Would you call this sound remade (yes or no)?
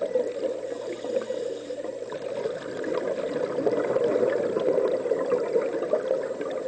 no